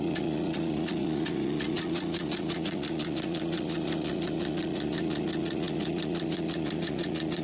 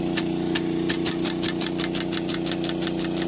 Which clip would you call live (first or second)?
second